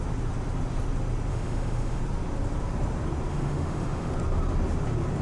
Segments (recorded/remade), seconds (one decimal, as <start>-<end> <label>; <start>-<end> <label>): 0.0-1.3 recorded; 1.3-2.0 remade; 2.0-3.3 recorded; 3.3-4.1 remade; 4.1-5.2 recorded